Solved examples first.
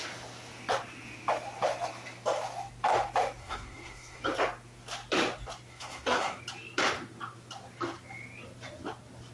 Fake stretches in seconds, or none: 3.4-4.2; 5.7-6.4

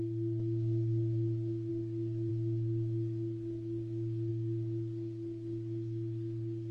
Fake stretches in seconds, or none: 0.0-6.7

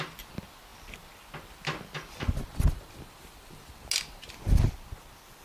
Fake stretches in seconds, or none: none

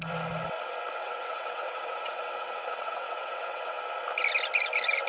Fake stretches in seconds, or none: 1.0-3.8

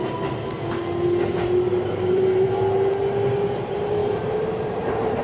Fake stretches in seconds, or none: 1.7-2.5; 4.0-5.2